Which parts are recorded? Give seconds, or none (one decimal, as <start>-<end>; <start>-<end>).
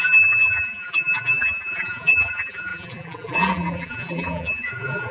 none